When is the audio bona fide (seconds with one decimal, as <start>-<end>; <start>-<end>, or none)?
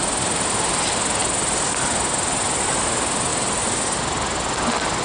0.0-3.3; 4.0-5.0